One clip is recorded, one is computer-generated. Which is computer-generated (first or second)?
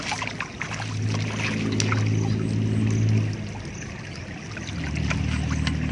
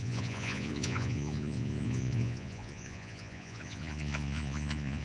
second